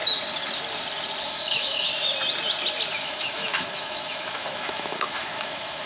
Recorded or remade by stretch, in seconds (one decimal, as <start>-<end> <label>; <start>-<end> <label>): 0.0-1.2 recorded; 1.2-1.9 remade; 1.9-3.0 recorded; 3.0-5.9 remade